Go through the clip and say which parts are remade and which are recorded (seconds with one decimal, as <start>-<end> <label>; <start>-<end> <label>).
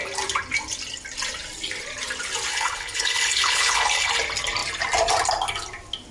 0.0-2.5 recorded; 2.5-4.1 remade; 4.1-6.1 recorded